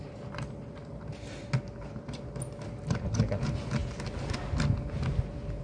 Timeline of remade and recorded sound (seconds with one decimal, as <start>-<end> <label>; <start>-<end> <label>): 0.0-5.6 recorded